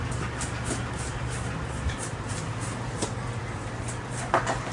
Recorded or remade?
recorded